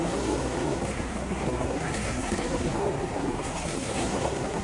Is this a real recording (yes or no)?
no